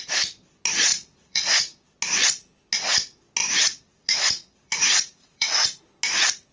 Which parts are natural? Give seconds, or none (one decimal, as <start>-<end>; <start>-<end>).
0.0-0.9; 1.6-3.4; 5.8-6.5